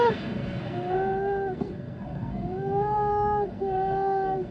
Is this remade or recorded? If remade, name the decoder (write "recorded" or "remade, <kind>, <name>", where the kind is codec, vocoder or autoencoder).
remade, codec, SNAC